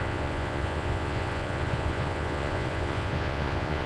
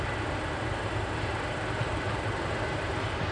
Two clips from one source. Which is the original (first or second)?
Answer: second